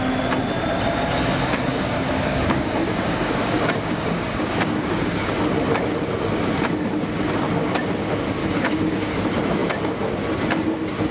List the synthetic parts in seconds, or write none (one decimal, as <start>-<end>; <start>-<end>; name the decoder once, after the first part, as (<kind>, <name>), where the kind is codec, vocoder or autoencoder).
1.7-5.3 (codec, DAC); 8.4-9.2